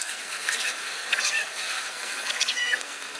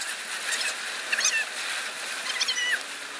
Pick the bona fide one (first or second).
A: second